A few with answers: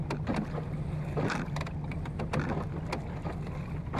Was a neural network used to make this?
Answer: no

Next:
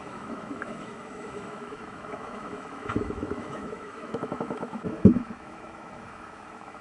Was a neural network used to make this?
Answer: yes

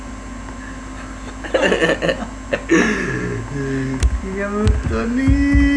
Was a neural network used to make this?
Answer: no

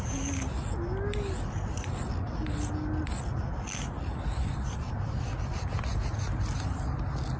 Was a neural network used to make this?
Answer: no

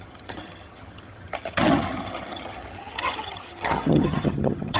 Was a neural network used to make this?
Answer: yes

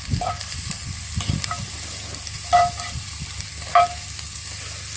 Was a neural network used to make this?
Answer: no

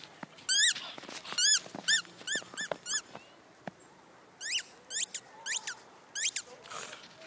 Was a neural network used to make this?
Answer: no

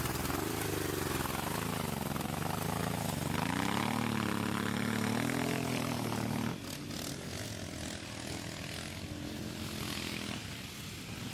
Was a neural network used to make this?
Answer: no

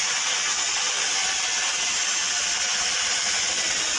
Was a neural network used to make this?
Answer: yes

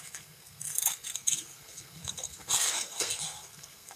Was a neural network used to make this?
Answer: yes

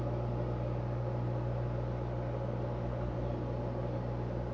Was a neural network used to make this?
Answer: no